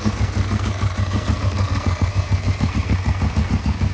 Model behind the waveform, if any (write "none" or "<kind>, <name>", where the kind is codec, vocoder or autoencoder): codec, SNAC